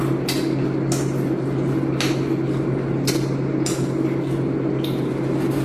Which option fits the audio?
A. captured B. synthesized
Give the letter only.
A